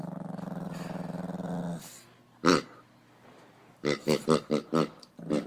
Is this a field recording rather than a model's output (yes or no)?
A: yes